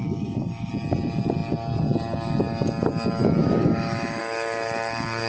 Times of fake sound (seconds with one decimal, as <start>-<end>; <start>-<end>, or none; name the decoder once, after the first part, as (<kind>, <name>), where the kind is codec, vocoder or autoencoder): 0.0-0.7 (autoencoder, DAC-VAE); 3.4-4.2